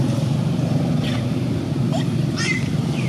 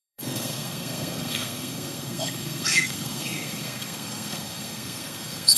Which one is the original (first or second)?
first